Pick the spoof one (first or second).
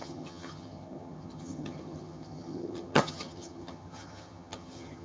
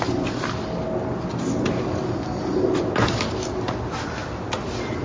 first